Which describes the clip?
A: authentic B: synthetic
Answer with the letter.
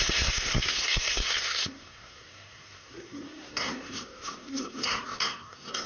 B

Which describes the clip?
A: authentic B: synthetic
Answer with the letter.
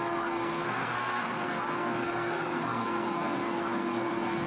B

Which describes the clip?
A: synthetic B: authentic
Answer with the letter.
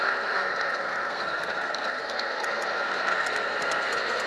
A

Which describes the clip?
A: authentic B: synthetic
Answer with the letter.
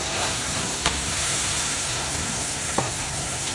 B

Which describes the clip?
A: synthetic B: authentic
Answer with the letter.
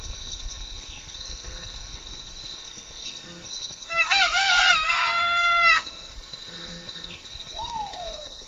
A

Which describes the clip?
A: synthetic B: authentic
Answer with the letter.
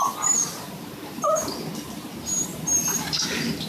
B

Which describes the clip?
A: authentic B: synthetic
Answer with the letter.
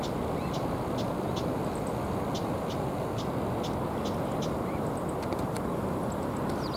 A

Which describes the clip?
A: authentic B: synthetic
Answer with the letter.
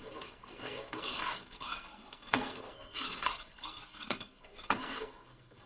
B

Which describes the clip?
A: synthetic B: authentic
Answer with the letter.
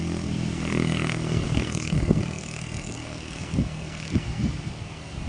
A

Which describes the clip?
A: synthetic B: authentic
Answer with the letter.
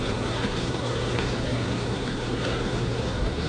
A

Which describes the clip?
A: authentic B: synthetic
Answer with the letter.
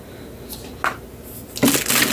A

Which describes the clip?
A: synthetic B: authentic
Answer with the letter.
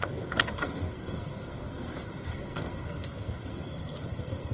A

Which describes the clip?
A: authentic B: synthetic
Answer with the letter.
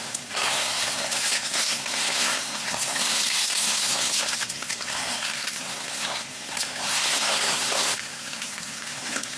B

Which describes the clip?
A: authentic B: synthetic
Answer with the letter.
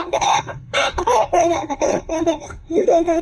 B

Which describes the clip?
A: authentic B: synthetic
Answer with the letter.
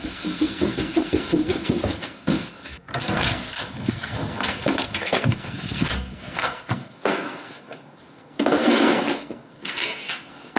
B